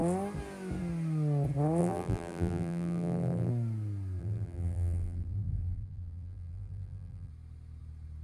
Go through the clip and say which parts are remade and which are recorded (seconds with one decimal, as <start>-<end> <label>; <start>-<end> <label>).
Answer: 0.0-1.8 recorded; 1.8-3.5 remade; 3.5-4.2 recorded; 4.2-7.3 remade; 7.3-8.2 recorded